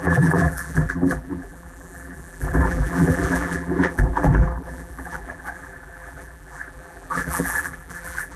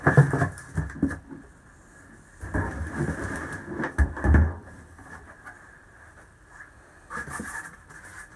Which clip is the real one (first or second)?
second